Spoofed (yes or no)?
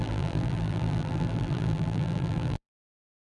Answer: yes